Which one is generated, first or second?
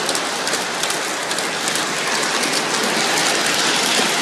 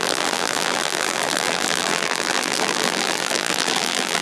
second